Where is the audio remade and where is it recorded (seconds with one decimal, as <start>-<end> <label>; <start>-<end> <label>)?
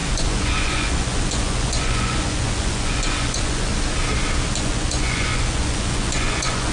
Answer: 0.0-3.7 remade; 3.7-4.6 recorded; 4.6-6.7 remade